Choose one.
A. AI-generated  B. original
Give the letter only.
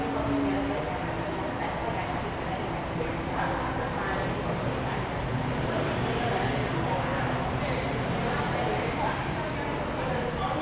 B